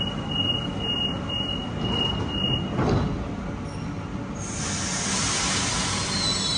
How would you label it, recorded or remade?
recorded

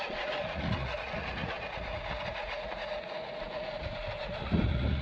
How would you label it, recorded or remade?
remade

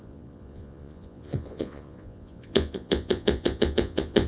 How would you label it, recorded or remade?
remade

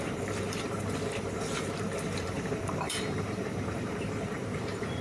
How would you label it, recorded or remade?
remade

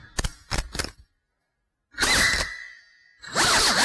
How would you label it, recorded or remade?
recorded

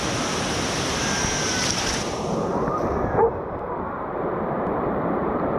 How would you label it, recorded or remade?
remade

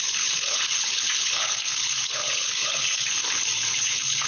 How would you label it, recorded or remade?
remade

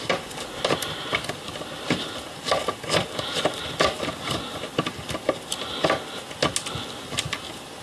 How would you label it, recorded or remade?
recorded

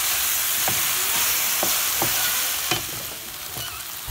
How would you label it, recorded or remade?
recorded